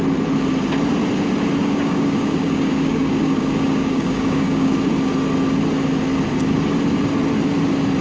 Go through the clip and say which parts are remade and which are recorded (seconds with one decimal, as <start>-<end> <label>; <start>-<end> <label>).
0.0-1.6 recorded; 1.6-4.7 remade; 4.7-8.0 recorded